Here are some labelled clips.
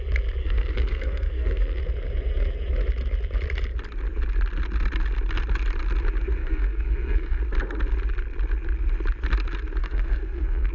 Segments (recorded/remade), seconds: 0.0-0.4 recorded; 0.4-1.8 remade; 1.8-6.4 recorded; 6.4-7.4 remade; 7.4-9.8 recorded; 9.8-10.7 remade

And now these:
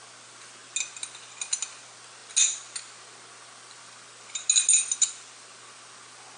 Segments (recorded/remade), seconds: 0.0-6.4 recorded

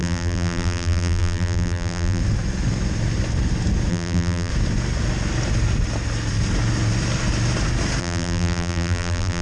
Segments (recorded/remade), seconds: 0.0-2.2 remade; 2.2-3.9 recorded; 3.9-4.5 remade; 4.5-8.0 recorded; 8.0-9.4 remade

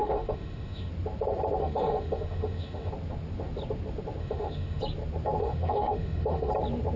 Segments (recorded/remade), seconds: 0.0-0.9 remade; 0.9-1.6 recorded; 1.6-2.9 remade; 2.9-4.2 recorded; 4.2-4.8 remade; 4.8-5.4 recorded; 5.4-6.5 remade; 6.5-7.0 recorded

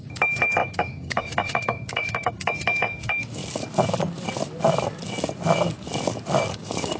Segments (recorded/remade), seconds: 0.0-3.4 remade; 3.4-6.5 recorded; 6.5-7.0 remade

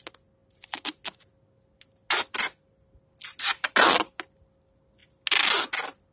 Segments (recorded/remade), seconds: 0.0-6.1 recorded